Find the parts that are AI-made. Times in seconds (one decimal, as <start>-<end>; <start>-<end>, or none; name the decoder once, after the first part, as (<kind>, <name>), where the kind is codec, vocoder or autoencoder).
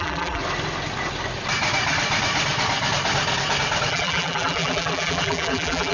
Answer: 0.0-0.4 (vocoder, BigVGAN v2); 3.9-5.9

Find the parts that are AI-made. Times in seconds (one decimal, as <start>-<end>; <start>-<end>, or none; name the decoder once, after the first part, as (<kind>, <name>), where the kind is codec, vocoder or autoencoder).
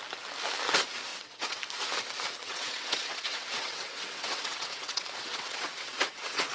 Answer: 1.1-1.6 (vocoder, WaveNeXt); 2.4-6.5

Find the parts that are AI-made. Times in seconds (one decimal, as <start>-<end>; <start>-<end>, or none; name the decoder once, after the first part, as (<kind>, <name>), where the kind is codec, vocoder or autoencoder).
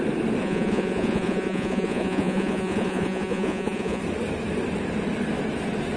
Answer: 0.4-4.0 (vocoder, Vocos)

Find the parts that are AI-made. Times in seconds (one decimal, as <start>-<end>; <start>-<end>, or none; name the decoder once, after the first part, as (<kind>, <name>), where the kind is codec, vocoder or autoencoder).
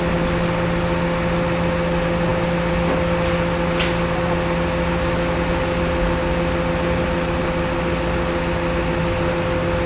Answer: none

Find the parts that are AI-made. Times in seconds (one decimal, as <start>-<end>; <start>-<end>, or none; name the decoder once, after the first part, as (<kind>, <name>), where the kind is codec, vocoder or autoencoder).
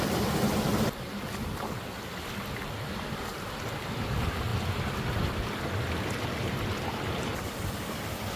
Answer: none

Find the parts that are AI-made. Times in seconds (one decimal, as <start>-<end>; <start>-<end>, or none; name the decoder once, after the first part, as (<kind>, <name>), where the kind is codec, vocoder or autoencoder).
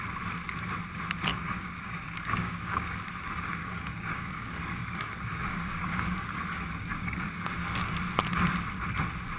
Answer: 1.3-3.0 (codec, DAC); 3.6-8.0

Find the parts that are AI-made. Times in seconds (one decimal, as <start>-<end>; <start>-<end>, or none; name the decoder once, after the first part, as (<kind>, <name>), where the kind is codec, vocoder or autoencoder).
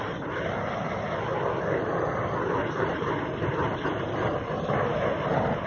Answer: none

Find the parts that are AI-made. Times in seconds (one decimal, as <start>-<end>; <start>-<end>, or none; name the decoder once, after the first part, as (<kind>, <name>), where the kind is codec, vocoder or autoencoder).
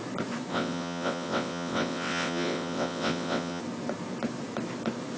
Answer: 0.5-3.6 (vocoder, WaveNeXt)